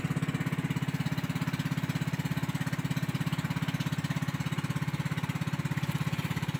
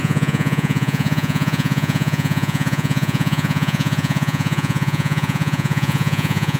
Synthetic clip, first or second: second